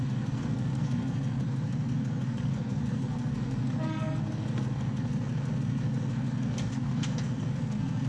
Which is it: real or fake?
fake